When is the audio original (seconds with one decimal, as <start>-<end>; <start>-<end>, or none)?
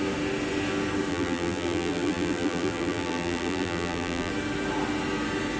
0.0-1.1; 4.3-5.6